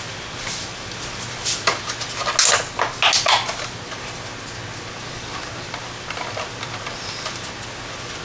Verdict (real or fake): real